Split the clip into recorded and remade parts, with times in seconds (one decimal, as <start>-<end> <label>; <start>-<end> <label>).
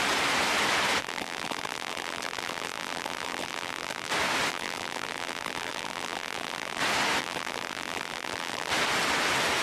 0.0-1.0 recorded; 1.0-4.1 remade; 4.1-4.5 recorded; 4.5-6.8 remade; 6.8-7.2 recorded; 7.2-8.7 remade; 8.7-9.6 recorded